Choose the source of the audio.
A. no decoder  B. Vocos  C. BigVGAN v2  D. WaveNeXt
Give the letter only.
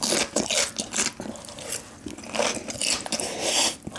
A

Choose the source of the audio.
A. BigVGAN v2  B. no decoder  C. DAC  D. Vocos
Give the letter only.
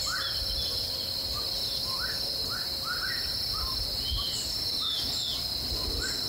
B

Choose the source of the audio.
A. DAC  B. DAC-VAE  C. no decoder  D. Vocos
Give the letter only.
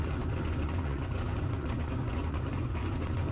D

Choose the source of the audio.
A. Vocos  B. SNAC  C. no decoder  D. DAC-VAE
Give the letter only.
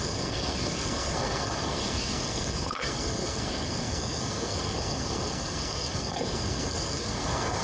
B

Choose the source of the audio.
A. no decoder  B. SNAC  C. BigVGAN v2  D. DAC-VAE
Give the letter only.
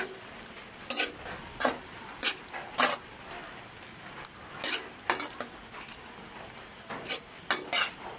A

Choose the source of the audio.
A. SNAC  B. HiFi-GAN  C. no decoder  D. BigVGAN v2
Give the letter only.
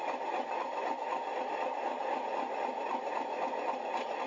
C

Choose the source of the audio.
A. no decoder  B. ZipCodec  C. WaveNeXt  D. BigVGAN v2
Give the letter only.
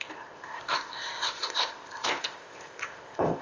B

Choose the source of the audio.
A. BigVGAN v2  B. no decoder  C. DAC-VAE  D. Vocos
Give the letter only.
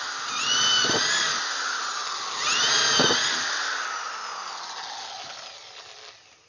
B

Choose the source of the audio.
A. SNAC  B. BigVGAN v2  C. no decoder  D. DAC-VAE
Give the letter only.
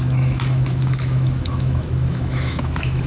D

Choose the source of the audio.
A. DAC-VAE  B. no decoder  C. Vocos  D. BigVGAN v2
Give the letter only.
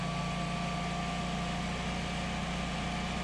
B